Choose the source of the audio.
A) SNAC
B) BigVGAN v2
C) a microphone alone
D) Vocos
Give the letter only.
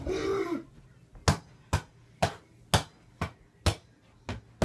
C